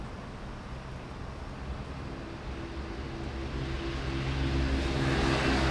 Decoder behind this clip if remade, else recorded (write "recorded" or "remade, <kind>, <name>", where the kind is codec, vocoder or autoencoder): recorded